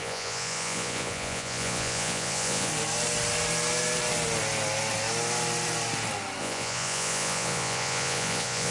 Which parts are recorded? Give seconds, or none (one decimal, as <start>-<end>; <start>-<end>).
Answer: 2.7-6.4